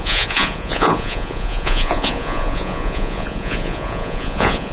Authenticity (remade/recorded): remade